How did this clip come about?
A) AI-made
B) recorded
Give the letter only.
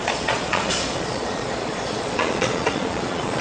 A